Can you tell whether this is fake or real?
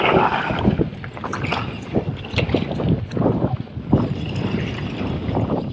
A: real